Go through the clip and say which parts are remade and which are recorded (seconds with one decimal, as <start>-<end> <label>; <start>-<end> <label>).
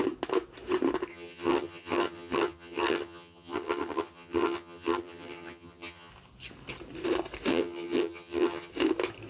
0.0-1.1 recorded; 1.1-6.1 remade; 6.1-7.5 recorded; 7.5-8.7 remade; 8.7-9.3 recorded